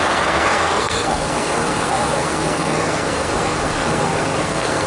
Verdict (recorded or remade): remade